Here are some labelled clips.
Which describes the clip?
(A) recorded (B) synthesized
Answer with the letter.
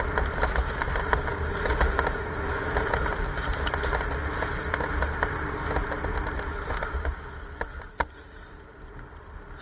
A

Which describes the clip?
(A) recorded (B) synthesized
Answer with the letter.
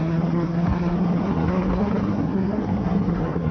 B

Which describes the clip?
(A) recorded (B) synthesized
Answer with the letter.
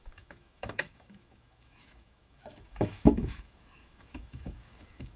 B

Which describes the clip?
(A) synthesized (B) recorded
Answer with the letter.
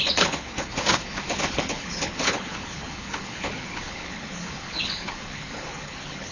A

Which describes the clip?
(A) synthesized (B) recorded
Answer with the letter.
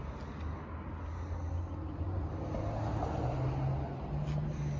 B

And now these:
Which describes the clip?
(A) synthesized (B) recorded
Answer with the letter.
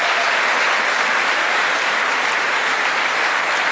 B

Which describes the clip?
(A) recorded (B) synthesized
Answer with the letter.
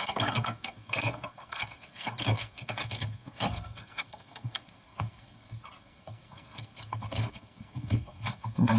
B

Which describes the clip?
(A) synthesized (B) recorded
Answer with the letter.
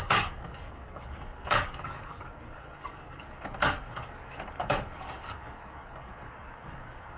A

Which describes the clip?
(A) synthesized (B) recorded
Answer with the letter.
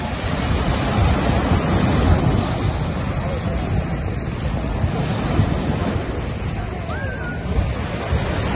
B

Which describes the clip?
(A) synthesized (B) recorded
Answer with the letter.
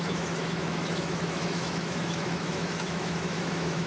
A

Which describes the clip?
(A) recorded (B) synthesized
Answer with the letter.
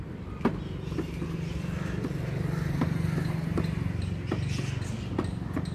A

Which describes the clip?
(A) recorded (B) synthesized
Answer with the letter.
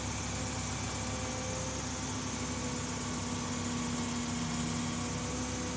A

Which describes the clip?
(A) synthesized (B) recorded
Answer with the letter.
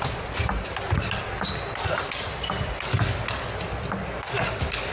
B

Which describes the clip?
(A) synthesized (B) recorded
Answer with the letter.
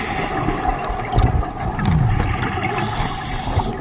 B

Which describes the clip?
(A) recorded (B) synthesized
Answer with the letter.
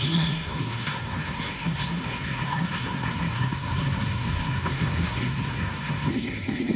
B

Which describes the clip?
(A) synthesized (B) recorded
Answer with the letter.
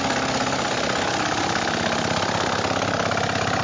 B